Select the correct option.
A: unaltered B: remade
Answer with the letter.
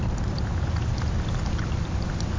A